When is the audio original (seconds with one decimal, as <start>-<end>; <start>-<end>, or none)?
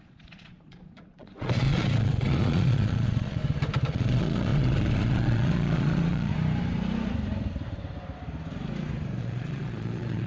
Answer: 3.4-3.9; 6.3-9.2